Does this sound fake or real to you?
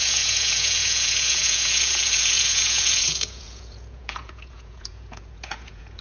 fake